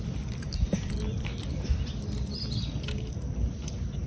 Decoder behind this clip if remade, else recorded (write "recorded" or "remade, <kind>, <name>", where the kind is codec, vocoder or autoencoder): recorded